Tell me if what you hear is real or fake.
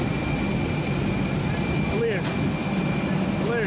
real